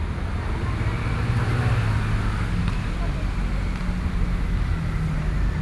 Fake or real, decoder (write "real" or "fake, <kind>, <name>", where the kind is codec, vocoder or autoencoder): real